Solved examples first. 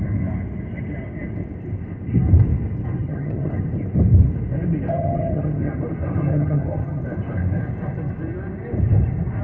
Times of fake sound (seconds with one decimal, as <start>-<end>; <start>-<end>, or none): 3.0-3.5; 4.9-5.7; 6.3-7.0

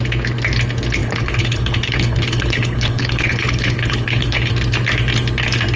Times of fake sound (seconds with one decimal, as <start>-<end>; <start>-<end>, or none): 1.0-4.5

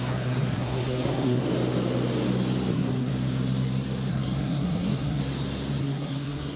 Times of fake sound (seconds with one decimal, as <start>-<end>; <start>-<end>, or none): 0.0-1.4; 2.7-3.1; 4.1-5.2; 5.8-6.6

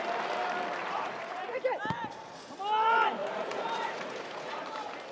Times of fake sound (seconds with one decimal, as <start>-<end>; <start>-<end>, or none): 0.8-1.6; 3.2-4.6